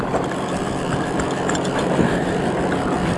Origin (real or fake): real